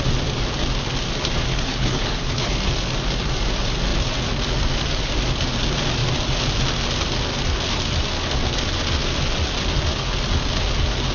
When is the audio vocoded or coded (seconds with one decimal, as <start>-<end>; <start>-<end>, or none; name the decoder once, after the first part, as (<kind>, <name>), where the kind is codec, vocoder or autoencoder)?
1.5-2.5 (codec, HILCodec)